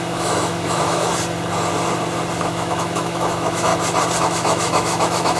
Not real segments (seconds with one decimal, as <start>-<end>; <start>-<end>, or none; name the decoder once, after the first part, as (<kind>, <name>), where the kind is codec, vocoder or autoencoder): 0.0-1.1 (autoencoder, DAC-VAE); 2.4-3.7; 4.2-5.4